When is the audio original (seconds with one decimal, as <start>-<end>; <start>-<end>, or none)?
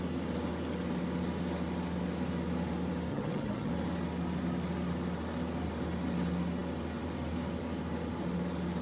0.0-3.1; 3.7-8.8